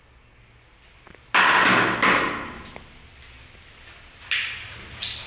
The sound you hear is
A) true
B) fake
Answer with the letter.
A